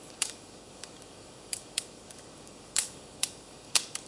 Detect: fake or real fake